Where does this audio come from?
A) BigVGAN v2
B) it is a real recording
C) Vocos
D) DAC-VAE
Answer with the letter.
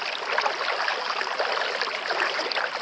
B